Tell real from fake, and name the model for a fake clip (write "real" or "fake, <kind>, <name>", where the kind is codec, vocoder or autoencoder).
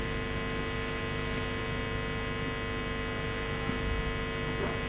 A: real